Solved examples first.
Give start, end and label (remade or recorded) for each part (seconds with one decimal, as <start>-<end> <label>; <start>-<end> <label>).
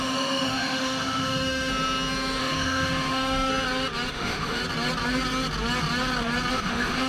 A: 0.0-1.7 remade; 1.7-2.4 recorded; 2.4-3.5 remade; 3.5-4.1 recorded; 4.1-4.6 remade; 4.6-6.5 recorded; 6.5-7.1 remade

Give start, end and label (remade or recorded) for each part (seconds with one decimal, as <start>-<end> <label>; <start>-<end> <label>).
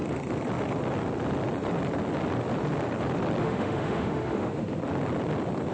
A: 0.0-3.4 recorded; 3.4-4.8 remade; 4.8-5.7 recorded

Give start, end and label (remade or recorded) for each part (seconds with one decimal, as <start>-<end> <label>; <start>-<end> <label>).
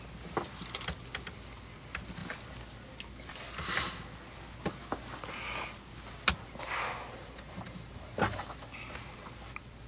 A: 0.0-9.9 recorded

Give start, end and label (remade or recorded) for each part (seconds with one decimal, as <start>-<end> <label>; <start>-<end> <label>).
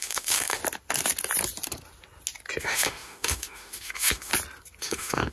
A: 0.0-0.6 remade; 0.6-2.6 recorded; 2.6-4.3 remade; 4.3-4.8 recorded; 4.8-5.3 remade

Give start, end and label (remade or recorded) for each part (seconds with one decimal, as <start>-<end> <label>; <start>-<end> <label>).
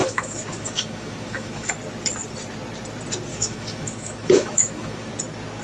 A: 0.0-1.7 remade; 1.7-3.3 recorded; 3.3-5.1 remade; 5.1-5.6 recorded